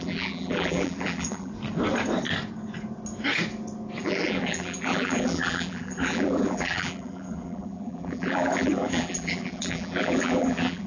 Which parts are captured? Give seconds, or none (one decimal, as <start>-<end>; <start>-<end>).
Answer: 1.5-4.0